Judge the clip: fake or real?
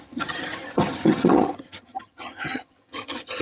fake